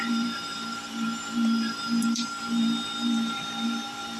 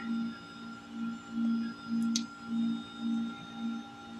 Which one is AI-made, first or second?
first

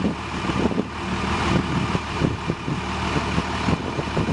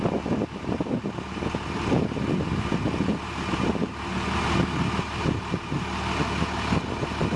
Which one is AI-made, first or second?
first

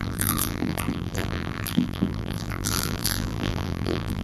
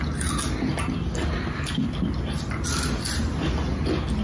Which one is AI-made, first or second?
first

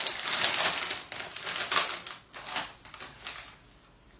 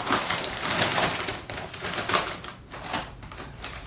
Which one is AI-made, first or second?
second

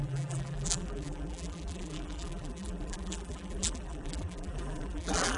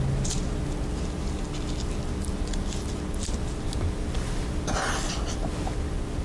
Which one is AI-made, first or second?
first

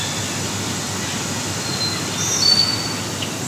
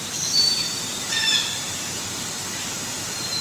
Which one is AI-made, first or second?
second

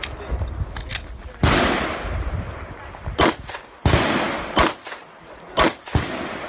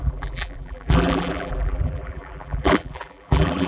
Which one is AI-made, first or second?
second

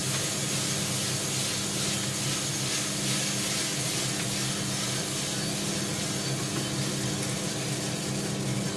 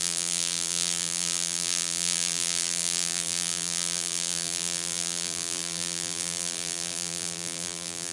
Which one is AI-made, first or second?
second